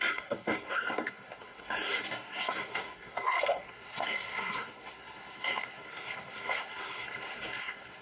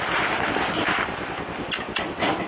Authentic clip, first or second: second